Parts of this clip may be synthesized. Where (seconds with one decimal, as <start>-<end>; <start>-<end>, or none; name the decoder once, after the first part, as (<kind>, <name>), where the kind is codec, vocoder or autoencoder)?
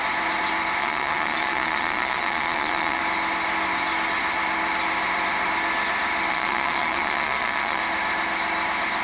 0.8-3.0 (vocoder, Vocos); 6.3-7.8